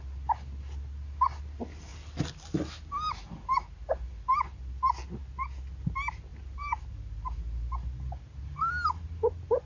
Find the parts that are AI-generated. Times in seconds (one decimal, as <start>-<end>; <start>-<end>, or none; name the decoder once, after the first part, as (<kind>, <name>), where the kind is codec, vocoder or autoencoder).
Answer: none